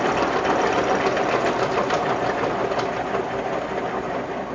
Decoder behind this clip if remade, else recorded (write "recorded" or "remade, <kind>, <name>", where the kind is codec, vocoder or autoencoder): recorded